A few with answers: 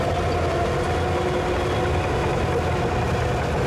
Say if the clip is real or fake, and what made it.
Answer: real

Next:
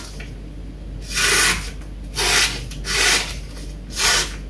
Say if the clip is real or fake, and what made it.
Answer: real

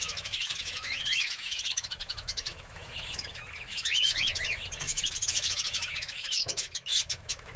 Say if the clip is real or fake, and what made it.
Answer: fake, autoencoder, DAC-VAE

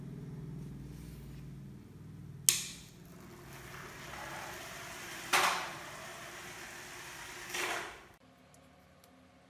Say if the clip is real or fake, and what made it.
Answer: real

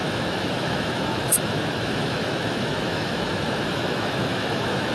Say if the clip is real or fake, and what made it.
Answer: fake, autoencoder, DAC-VAE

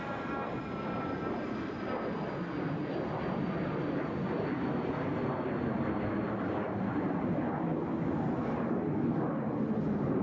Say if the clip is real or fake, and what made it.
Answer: real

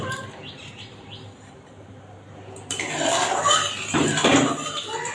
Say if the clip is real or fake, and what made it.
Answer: real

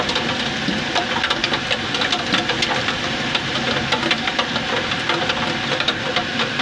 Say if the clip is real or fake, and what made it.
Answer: real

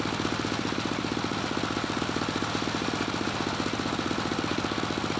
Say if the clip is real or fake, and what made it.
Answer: real